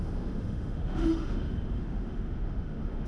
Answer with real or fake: fake